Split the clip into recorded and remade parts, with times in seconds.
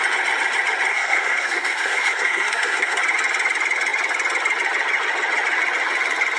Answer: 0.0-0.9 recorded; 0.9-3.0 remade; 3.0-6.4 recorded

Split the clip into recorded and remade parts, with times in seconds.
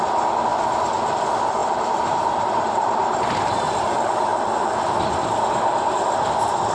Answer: 0.0-1.6 recorded; 1.6-2.5 remade; 2.5-3.0 recorded; 3.0-3.6 remade; 3.6-6.7 recorded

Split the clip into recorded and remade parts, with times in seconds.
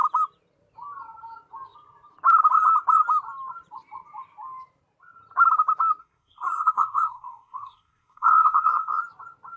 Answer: 0.0-6.0 recorded; 6.0-9.0 remade; 9.0-9.6 recorded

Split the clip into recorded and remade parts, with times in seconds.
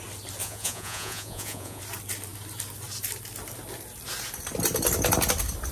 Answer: 0.0-0.4 recorded; 0.4-1.8 remade; 1.8-5.7 recorded